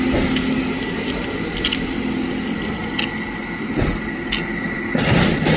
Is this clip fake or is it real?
real